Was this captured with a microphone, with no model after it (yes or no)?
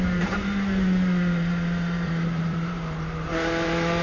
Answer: no